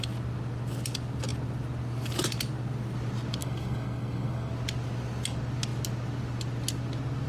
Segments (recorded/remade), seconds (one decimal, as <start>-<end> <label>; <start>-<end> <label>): 0.0-3.4 recorded; 3.4-4.5 remade; 4.5-7.3 recorded